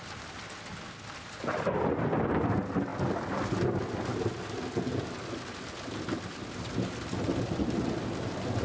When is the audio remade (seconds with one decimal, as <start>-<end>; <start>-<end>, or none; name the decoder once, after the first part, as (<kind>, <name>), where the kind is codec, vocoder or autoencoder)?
none